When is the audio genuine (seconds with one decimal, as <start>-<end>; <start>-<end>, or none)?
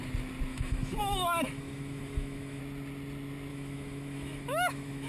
0.0-0.5; 2.6-3.5